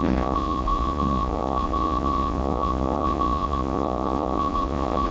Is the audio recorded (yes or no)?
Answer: no